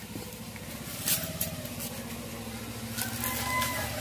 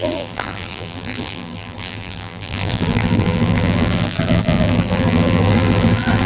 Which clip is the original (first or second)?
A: first